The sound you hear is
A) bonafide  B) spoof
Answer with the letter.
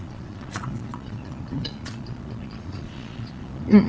B